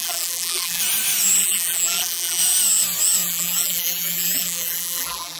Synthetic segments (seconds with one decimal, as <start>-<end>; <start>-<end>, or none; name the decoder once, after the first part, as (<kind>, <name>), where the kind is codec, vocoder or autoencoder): 0.0-0.8 (vocoder, BigVGAN v2); 1.4-2.4; 3.2-5.4